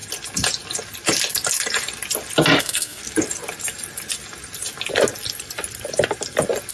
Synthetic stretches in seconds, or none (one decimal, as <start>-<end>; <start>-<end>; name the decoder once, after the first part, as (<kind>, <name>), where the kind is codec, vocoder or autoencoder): 2.6-3.0 (codec, SNAC)